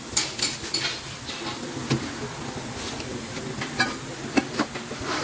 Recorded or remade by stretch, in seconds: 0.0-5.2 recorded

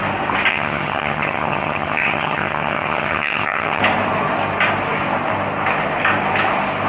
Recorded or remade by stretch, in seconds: 0.0-0.5 recorded; 0.5-3.8 remade; 3.8-6.9 recorded